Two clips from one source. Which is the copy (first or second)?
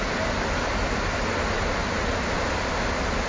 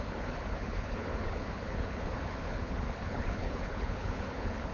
second